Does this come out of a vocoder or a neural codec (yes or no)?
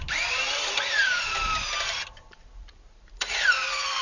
yes